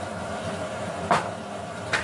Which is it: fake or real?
real